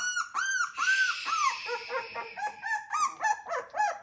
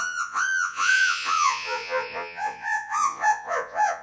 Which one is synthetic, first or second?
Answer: second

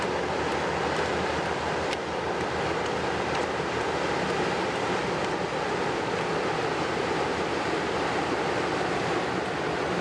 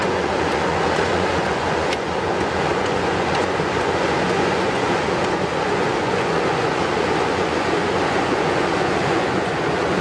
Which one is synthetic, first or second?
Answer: second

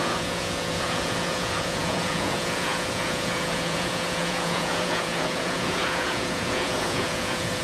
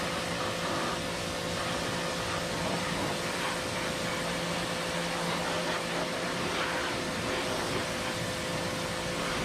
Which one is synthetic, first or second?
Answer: first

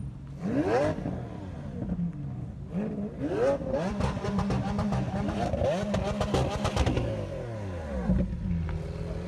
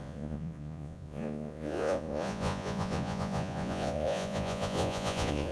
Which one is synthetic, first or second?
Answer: second